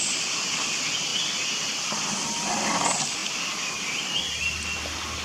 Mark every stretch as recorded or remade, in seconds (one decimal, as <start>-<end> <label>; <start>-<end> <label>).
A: 0.0-5.2 recorded